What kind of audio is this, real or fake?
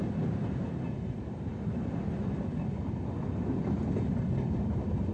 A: real